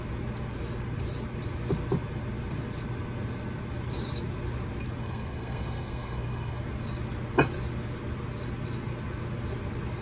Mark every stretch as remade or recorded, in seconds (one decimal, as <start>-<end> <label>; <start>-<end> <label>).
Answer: 0.0-5.0 recorded; 5.0-6.6 remade; 6.6-10.0 recorded